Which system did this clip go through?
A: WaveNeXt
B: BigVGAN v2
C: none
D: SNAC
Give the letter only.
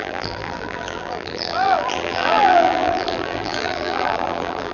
B